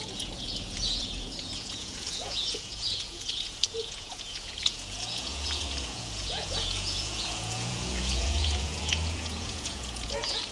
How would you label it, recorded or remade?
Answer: remade